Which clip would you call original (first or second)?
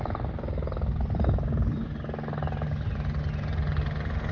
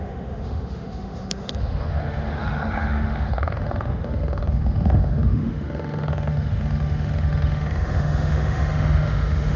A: first